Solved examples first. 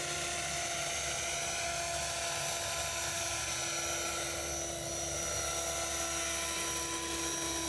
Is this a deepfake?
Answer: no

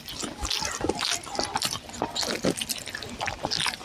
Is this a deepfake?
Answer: no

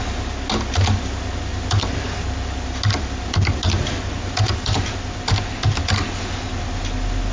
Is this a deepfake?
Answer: no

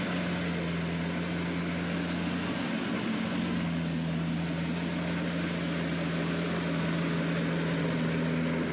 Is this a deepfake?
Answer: no